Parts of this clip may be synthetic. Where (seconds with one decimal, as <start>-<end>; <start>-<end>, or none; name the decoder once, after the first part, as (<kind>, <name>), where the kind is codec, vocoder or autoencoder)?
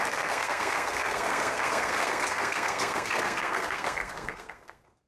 0.0-5.1 (codec, SNAC)